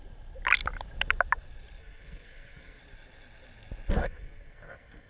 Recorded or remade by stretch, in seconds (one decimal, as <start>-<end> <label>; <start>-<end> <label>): 0.0-1.8 recorded; 1.8-2.8 remade; 2.8-4.0 recorded; 4.0-5.1 remade